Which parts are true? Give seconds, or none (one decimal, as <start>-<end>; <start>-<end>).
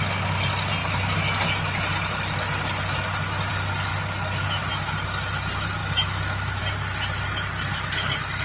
0.0-5.8; 6.6-8.4